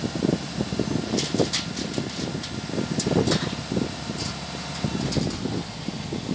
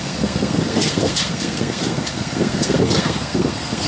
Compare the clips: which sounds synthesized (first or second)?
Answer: second